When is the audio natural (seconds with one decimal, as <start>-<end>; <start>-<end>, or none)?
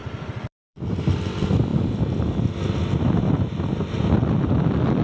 1.0-5.0